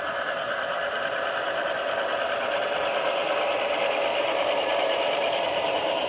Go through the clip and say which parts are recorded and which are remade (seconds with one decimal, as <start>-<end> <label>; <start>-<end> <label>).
0.0-4.1 recorded; 4.1-6.1 remade